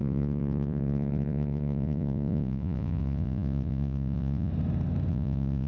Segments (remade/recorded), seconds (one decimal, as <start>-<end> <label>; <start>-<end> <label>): 0.0-4.5 remade; 4.5-5.1 recorded; 5.1-5.7 remade